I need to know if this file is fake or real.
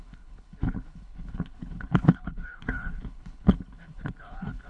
fake